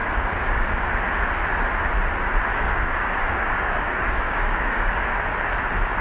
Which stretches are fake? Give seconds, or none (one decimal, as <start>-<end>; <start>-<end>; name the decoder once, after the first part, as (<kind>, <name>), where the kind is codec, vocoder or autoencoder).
0.0-0.9 (codec, DAC); 2.5-5.1